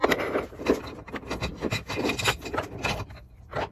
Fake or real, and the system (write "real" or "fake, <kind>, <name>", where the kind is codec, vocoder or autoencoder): real